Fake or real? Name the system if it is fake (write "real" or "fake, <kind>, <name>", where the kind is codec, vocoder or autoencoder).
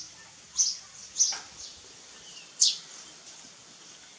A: real